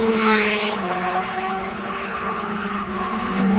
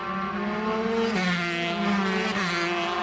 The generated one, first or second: first